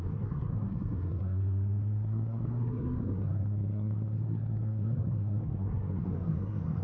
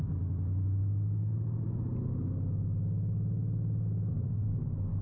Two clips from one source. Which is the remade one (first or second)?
first